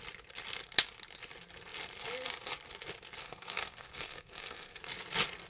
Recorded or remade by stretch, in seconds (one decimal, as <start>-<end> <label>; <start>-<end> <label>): 0.0-3.2 recorded; 3.2-4.8 remade; 4.8-5.5 recorded